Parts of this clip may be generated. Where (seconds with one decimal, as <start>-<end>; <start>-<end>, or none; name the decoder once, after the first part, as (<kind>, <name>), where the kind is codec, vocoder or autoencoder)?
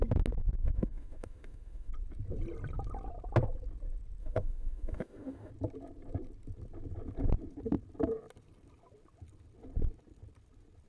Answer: 0.6-1.9 (autoencoder, DAC-VAE); 4.2-5.5